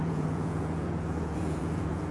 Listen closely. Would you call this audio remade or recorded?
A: remade